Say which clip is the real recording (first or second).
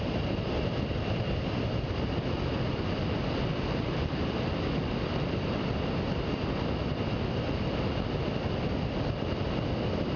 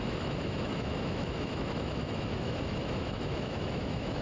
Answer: first